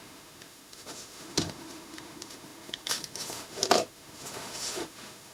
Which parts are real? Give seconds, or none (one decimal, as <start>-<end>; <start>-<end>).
none